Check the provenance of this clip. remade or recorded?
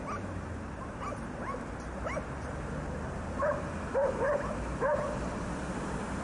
recorded